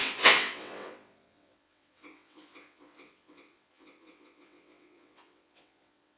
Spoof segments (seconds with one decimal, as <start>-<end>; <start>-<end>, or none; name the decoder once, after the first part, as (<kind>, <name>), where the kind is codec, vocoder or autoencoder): 0.0-6.2 (vocoder, WaveNeXt)

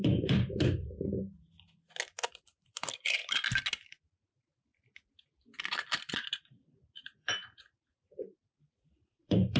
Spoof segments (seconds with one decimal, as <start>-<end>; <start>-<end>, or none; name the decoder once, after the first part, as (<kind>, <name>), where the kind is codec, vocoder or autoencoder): 0.0-0.8 (vocoder, BigVGAN v2); 2.1-3.2; 4.0-4.7; 6.3-9.6

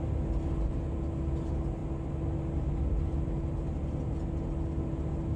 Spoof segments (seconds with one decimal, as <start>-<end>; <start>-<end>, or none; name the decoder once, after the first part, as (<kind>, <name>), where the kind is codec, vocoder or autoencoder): none

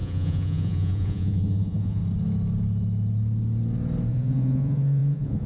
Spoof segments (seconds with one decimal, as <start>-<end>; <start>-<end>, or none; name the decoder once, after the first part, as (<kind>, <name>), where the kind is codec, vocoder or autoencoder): 0.0-2.0 (vocoder, Vocos); 4.1-5.5

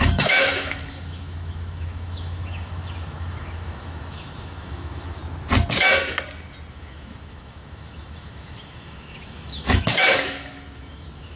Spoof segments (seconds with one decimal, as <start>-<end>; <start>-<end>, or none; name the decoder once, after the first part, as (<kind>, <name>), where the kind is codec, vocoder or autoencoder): 0.0-5.2 (autoencoder, DAC-VAE); 6.7-11.4